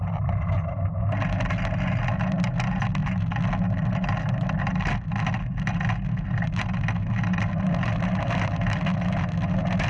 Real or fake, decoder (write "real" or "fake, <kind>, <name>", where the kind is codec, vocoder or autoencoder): real